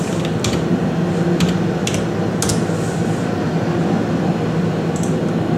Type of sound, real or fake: real